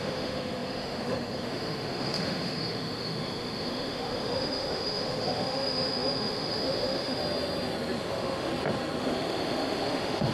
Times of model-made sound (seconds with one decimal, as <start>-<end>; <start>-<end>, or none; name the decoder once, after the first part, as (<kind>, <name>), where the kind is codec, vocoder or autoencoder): 0.0-7.2 (autoencoder, DAC-VAE); 8.0-8.5; 9.0-10.3